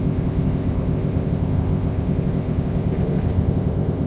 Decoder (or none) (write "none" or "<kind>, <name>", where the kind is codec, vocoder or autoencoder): codec, ZipCodec